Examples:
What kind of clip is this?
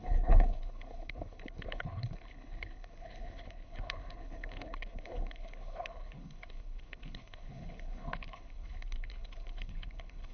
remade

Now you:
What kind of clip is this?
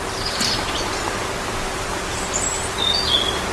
recorded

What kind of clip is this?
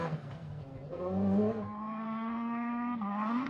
remade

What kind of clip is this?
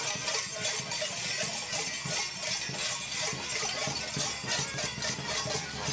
recorded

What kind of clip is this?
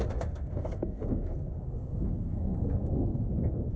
remade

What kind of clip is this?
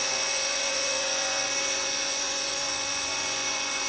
remade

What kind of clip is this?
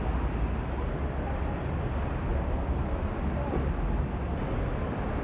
recorded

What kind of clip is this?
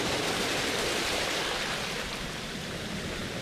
remade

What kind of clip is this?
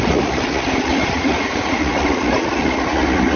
remade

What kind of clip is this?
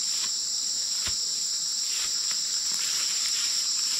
remade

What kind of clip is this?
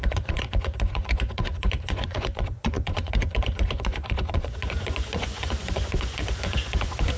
remade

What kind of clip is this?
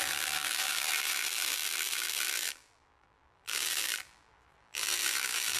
remade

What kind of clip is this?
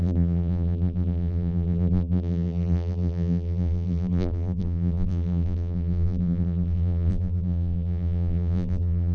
remade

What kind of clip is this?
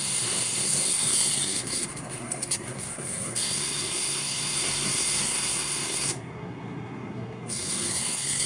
remade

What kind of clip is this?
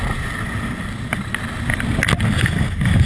recorded